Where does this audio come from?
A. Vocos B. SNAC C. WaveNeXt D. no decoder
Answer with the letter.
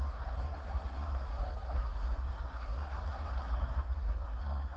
B